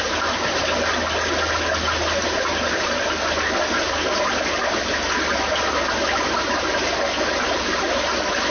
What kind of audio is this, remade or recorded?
recorded